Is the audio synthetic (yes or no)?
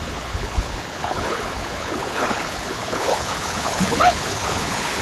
yes